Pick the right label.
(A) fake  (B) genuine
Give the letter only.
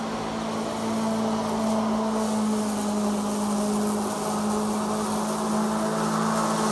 B